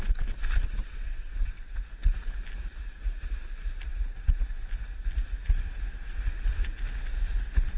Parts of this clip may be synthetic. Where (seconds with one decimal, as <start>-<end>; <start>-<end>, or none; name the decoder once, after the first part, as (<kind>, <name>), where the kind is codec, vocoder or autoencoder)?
0.8-1.9 (vocoder, WaveNeXt)